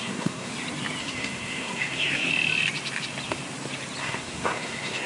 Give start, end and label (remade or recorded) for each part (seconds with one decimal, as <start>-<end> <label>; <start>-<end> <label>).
0.0-0.5 remade; 0.5-1.0 recorded; 1.0-2.3 remade; 2.3-4.0 recorded; 4.0-5.1 remade